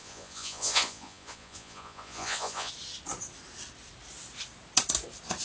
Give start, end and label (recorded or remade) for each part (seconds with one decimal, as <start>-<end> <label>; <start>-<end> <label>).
0.0-2.7 remade; 2.7-5.4 recorded